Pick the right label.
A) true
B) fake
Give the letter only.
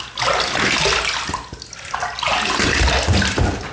A